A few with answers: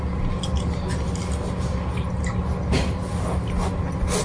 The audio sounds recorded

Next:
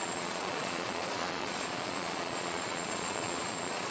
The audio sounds remade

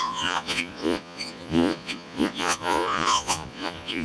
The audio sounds remade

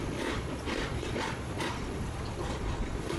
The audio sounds remade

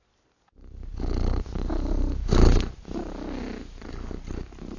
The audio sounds recorded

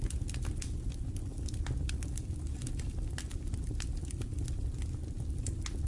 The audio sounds recorded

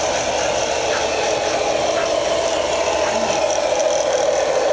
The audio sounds recorded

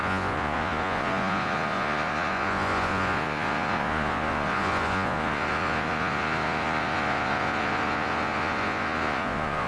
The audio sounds remade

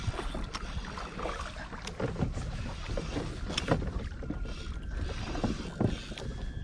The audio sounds recorded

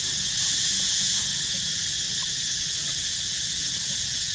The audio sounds remade